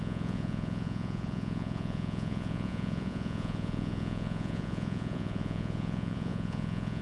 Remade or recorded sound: remade